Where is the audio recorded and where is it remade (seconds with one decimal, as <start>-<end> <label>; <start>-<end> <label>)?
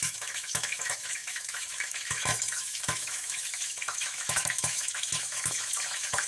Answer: 0.0-6.3 remade